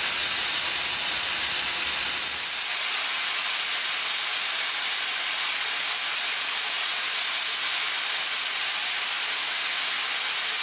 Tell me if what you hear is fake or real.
real